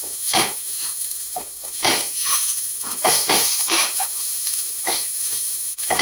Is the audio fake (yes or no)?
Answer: yes